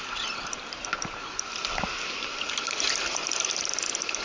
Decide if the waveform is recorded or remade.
recorded